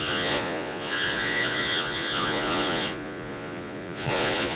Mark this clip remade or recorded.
remade